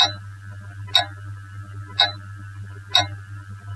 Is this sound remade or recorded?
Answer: recorded